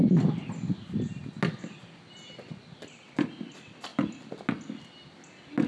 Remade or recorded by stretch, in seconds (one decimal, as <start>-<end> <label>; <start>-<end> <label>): 0.0-5.7 recorded